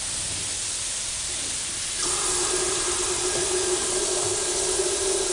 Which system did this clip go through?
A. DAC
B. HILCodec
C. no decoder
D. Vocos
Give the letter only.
C